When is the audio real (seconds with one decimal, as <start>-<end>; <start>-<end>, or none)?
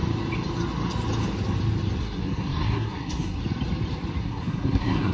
0.0-2.0; 3.4-4.2